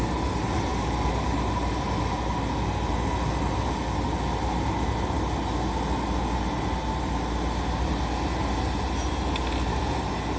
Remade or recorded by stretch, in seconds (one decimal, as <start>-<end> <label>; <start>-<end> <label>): 0.0-10.4 recorded